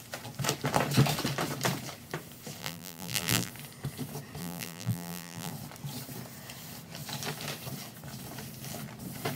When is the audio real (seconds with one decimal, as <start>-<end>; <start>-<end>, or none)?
0.0-2.6; 3.5-4.4; 5.5-9.4

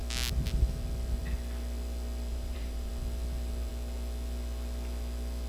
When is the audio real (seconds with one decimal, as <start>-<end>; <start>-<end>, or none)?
0.0-2.3; 2.9-5.5

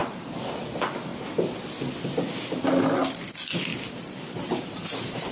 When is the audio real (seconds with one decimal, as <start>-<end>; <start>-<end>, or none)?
0.6-3.7

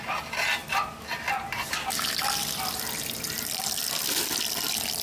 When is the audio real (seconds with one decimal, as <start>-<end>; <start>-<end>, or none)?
0.0-5.0

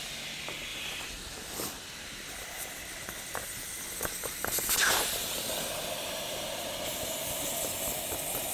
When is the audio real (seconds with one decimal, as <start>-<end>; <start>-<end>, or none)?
0.0-0.7; 5.7-8.5

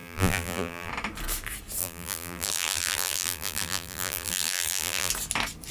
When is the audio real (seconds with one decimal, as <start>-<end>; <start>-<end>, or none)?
0.9-1.8; 5.1-5.7

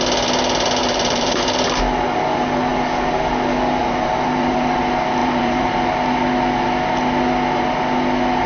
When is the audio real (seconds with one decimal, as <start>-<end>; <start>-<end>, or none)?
0.0-0.8; 1.8-3.8; 4.8-5.2; 5.9-8.5